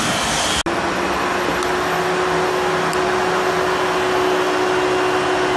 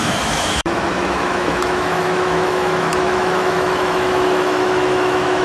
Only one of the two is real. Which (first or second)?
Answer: first